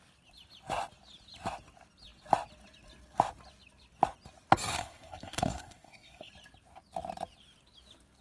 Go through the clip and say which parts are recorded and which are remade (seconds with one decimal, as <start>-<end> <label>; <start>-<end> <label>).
0.0-4.7 recorded; 4.7-6.3 remade; 6.3-8.2 recorded